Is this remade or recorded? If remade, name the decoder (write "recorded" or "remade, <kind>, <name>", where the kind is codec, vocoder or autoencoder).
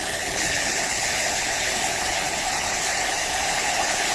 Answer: remade, codec, HILCodec